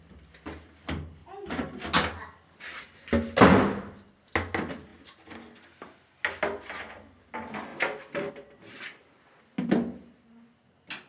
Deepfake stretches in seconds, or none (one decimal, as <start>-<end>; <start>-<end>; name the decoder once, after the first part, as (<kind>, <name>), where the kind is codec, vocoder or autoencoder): none